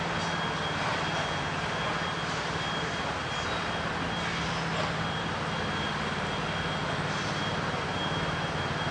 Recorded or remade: recorded